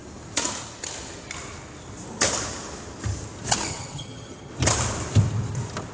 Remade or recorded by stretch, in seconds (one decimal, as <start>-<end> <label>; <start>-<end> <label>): 0.0-3.7 recorded; 3.7-4.5 remade; 4.5-5.9 recorded